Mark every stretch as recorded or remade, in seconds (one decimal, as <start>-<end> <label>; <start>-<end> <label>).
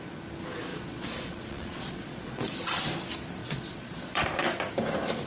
0.0-0.7 recorded; 0.7-2.5 remade; 2.5-3.4 recorded; 3.4-4.2 remade; 4.2-5.3 recorded